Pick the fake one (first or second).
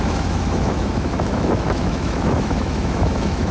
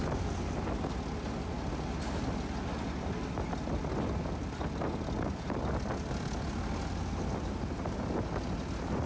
first